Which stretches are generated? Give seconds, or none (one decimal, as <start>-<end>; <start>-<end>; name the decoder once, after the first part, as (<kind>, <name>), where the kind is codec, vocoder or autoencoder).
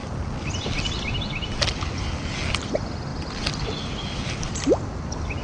none